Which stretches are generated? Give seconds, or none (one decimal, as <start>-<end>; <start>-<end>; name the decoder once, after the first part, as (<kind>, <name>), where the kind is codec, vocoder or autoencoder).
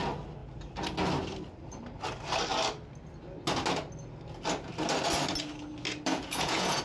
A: 6.1-6.8 (vocoder, Vocos)